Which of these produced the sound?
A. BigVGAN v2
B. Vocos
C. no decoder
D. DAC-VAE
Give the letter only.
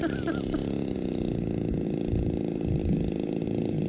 C